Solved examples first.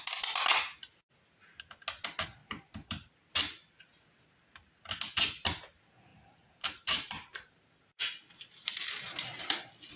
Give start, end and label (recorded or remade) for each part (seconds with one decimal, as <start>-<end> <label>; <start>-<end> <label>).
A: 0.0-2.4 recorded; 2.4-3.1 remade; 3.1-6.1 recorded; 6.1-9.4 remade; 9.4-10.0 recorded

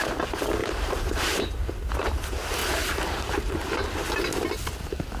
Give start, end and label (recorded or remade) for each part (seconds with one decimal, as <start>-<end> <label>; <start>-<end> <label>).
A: 0.0-0.6 recorded; 0.6-1.5 remade; 1.5-2.6 recorded; 2.6-3.9 remade; 3.9-5.2 recorded

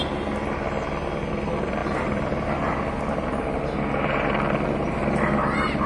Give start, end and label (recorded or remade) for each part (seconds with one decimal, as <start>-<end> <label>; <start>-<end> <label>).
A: 0.0-5.9 recorded

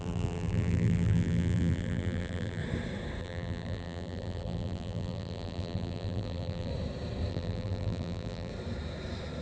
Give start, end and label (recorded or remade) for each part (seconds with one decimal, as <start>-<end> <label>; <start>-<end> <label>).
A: 0.0-2.6 remade; 2.6-3.2 recorded; 3.2-6.7 remade; 6.7-7.3 recorded; 7.3-8.5 remade; 8.5-9.4 recorded

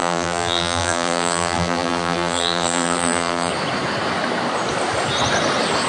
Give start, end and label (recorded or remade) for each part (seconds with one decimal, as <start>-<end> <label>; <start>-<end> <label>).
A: 0.0-3.5 remade; 3.5-5.9 recorded

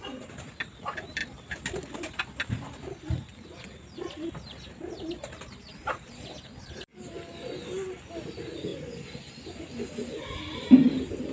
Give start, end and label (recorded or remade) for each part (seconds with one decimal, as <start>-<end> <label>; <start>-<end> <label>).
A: 0.0-8.7 recorded; 8.7-9.3 remade; 9.3-11.3 recorded

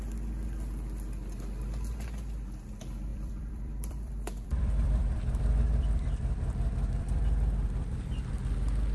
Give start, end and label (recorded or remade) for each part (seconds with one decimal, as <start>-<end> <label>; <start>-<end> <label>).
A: 0.0-3.1 recorded; 3.1-8.3 remade; 8.3-8.9 recorded

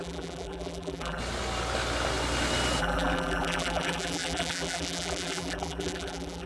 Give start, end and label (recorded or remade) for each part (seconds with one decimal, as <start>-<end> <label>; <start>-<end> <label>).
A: 0.0-1.2 remade; 1.2-2.8 recorded; 2.8-6.5 remade